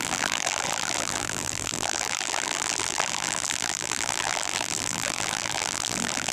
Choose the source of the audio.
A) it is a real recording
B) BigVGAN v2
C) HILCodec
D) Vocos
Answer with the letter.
B